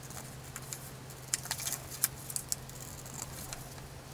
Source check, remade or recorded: recorded